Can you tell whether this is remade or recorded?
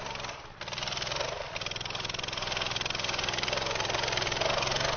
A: recorded